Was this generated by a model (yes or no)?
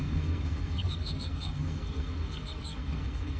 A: yes